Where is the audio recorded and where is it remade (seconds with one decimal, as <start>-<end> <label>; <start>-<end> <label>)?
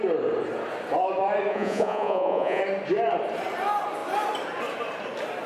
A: 0.0-1.5 recorded; 1.5-2.6 remade; 2.6-5.5 recorded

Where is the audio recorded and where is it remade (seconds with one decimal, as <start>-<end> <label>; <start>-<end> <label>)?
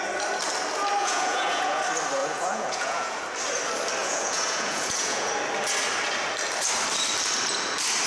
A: 0.0-1.0 recorded; 1.0-1.8 remade; 1.8-2.2 recorded; 2.2-3.2 remade; 3.2-4.0 recorded; 4.0-5.3 remade; 5.3-8.1 recorded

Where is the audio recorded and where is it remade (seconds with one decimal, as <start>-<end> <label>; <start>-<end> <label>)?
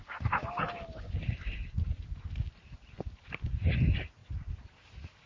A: 0.0-5.3 recorded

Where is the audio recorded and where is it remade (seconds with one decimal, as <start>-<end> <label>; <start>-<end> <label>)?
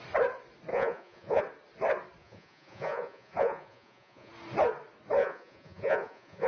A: 0.0-0.7 recorded; 0.7-1.4 remade; 1.4-2.2 recorded; 2.2-4.3 remade; 4.3-5.2 recorded; 5.2-6.5 remade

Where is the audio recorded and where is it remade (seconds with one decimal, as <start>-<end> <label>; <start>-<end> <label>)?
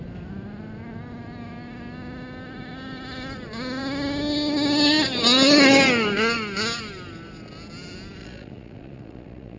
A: 0.0-8.2 recorded; 8.2-9.6 remade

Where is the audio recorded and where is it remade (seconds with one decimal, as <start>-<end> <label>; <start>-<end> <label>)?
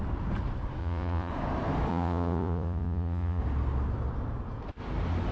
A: 0.0-0.8 recorded; 0.8-1.3 remade; 1.3-1.9 recorded; 1.9-3.4 remade; 3.4-5.3 recorded